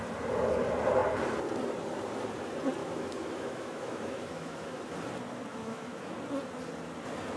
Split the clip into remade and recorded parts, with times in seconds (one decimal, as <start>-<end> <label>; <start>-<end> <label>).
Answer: 0.0-2.8 recorded; 2.8-4.8 remade; 4.8-5.5 recorded; 5.5-6.2 remade; 6.2-7.4 recorded